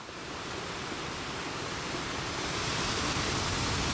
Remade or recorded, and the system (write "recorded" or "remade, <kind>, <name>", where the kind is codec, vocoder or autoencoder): recorded